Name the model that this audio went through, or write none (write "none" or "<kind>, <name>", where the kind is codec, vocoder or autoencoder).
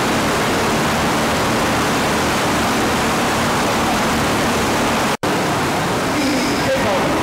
vocoder, BigVGAN v2